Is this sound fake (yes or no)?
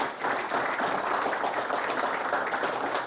no